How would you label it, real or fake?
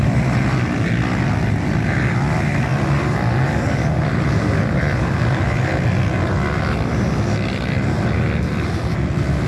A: real